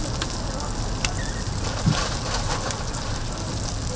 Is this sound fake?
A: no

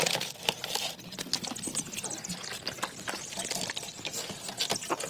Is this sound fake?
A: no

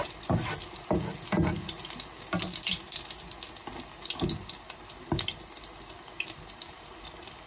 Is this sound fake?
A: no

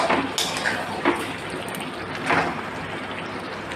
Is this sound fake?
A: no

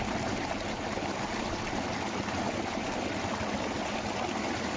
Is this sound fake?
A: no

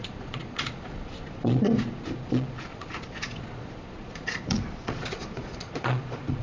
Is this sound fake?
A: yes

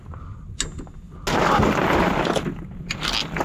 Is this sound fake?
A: no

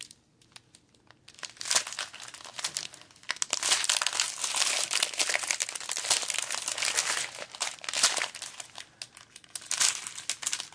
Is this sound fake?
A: no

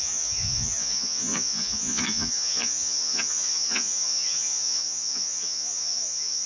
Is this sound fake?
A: yes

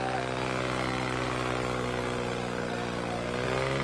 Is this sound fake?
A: no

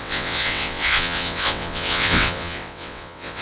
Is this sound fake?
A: yes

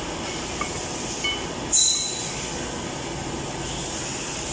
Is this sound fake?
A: no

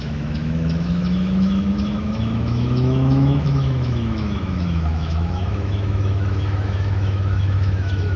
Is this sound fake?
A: yes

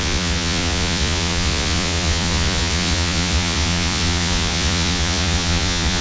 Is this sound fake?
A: yes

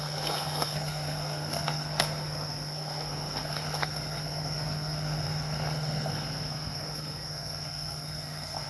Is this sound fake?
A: yes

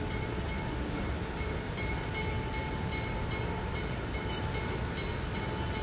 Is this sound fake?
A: no